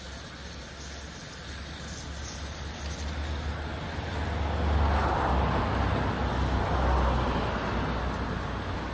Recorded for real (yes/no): yes